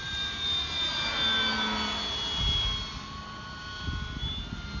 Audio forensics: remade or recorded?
recorded